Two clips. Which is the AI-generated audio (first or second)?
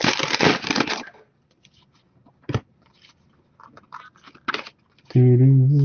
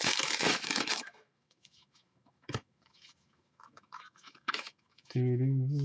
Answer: second